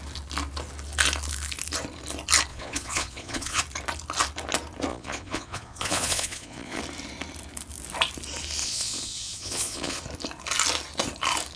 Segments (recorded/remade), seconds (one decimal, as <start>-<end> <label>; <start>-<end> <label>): 0.0-2.5 recorded; 2.5-3.6 remade; 3.6-4.9 recorded; 4.9-6.8 remade; 6.8-8.6 recorded; 8.6-10.0 remade; 10.0-11.6 recorded